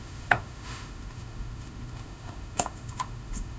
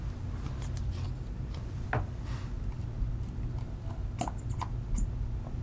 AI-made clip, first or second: first